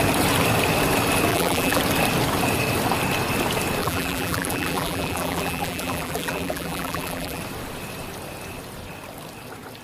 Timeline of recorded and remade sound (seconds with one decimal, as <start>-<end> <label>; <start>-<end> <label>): 0.0-1.3 recorded; 1.3-1.8 remade; 1.8-3.8 recorded; 3.8-7.4 remade; 7.4-9.8 recorded